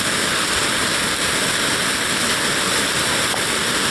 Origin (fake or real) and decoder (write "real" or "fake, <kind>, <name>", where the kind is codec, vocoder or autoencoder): real